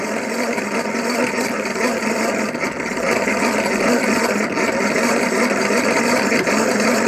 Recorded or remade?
recorded